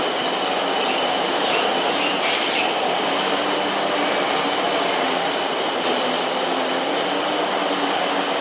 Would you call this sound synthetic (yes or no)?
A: no